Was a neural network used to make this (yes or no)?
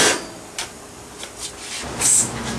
no